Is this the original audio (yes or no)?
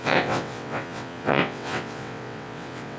no